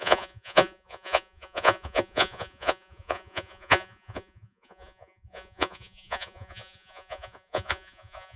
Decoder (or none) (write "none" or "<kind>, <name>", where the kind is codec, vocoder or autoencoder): vocoder, Vocos